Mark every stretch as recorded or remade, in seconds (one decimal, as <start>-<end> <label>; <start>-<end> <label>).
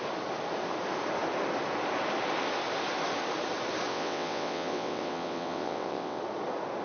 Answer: 0.0-3.9 recorded; 3.9-6.2 remade; 6.2-6.8 recorded